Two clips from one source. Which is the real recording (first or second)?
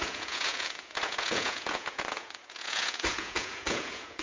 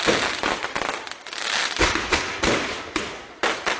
second